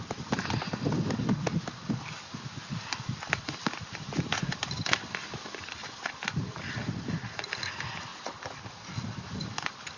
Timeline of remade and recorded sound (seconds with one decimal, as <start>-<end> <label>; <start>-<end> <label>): 0.0-10.0 recorded